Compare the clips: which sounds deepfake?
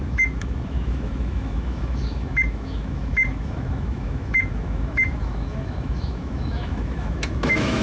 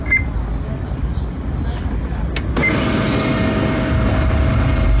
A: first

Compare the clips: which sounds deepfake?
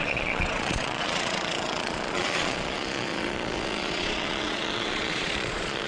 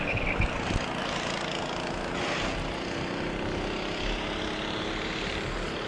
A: first